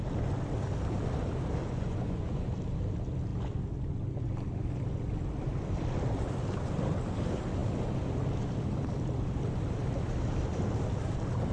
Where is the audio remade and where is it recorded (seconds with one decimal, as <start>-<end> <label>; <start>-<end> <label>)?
0.0-1.6 recorded; 1.6-2.5 remade; 2.5-11.5 recorded